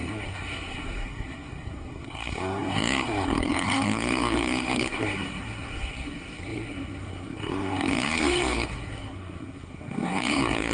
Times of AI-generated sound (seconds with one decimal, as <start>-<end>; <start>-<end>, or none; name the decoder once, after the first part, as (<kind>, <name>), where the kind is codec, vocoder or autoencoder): 0.0-10.7 (codec, SNAC)